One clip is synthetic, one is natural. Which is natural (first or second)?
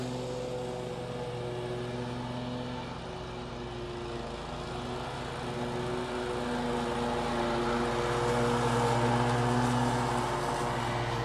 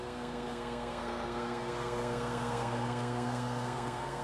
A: first